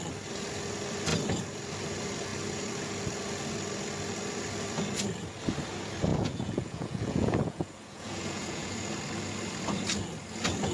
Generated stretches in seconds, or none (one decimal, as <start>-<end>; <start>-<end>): 6.1-8.7